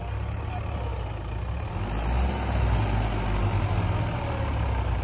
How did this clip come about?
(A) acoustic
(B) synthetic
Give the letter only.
A